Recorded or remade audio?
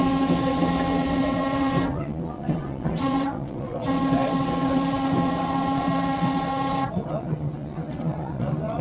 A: remade